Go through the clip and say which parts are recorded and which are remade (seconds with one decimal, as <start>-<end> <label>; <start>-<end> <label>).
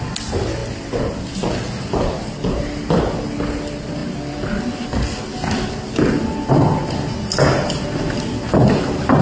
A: 0.0-9.2 recorded